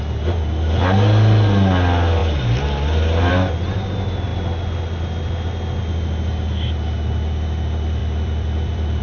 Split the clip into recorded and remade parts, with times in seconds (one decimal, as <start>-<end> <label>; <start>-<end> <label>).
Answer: 0.0-8.0 recorded; 8.0-9.0 remade

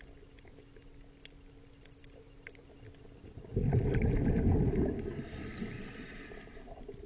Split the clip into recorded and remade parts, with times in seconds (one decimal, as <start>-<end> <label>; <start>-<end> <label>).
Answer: 0.0-7.1 recorded